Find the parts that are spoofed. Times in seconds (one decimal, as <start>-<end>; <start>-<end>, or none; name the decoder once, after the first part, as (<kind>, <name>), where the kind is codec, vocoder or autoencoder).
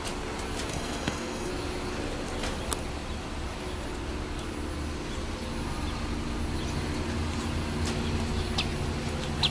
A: 0.7-1.5 (codec, SNAC)